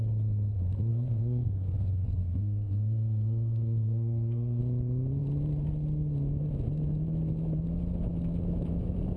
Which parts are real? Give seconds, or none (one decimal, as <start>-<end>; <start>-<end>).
0.0-0.9; 4.6-9.2